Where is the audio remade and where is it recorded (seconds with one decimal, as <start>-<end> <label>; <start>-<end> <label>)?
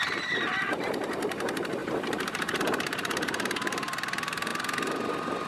0.0-4.5 remade; 4.5-5.5 recorded